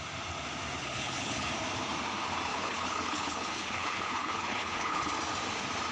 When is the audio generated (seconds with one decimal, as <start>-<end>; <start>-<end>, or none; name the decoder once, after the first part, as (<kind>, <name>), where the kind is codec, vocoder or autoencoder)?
0.8-1.5 (codec, HILCodec); 2.5-5.1